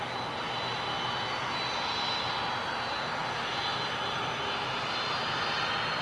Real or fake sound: real